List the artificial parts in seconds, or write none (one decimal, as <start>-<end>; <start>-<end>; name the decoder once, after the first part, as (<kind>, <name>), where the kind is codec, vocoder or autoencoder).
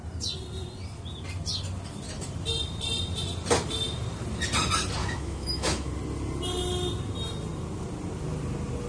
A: 5.0-5.9 (autoencoder, DAC-VAE)